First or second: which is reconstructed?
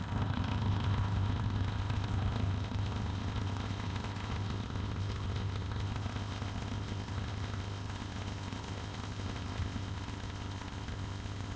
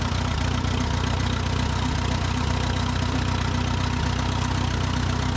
first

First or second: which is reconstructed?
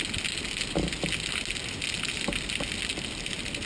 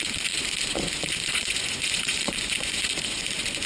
second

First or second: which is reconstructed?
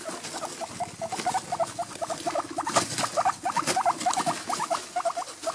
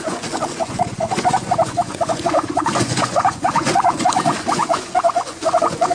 second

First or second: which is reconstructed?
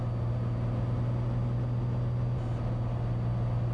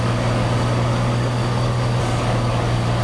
second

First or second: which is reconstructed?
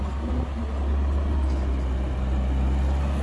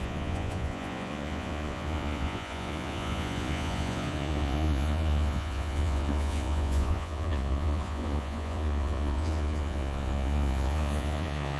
second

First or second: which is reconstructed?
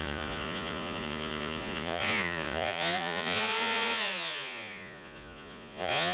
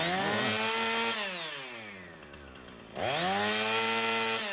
first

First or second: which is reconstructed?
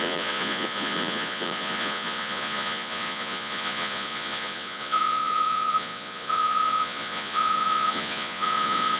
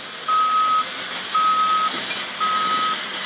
first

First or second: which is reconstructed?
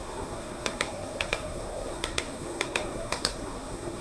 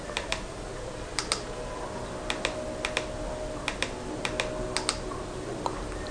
first